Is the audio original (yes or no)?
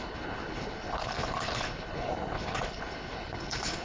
no